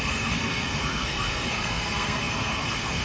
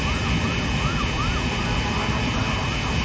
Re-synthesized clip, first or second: first